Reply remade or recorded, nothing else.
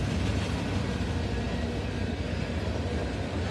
recorded